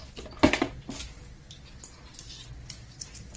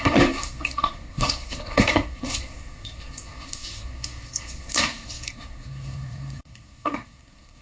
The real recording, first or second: first